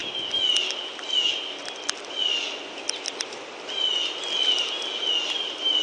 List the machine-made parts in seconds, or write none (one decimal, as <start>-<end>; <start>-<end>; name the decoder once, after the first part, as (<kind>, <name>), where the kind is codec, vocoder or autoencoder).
none